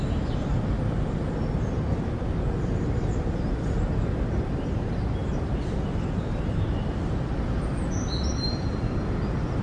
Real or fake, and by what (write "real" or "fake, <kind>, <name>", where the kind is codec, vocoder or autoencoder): real